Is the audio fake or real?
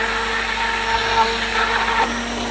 real